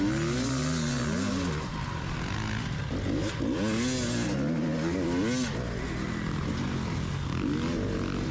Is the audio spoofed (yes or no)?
no